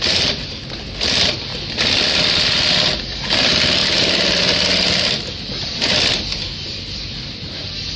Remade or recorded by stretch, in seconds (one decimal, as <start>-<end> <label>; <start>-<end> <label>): 0.0-8.0 recorded

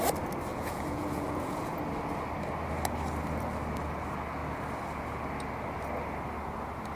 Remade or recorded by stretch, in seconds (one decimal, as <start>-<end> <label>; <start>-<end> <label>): 0.0-0.5 recorded; 0.5-1.6 remade; 1.6-7.0 recorded